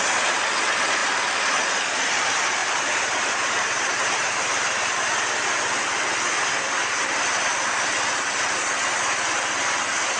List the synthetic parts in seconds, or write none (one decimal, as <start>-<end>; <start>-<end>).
1.0-1.7; 2.6-4.3